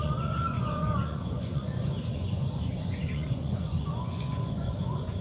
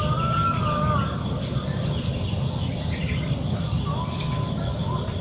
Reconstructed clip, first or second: first